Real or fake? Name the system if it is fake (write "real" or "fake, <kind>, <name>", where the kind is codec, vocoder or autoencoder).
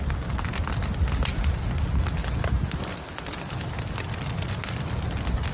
real